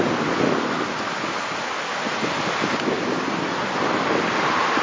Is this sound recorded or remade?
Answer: recorded